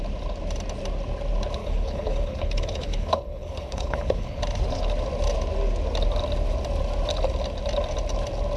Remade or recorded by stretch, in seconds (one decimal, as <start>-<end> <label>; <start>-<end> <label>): 0.0-1.6 recorded; 1.6-4.4 remade; 4.4-8.6 recorded